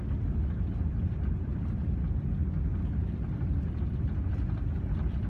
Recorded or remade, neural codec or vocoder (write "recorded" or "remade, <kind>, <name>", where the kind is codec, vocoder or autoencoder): recorded